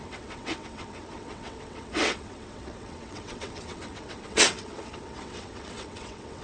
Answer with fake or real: fake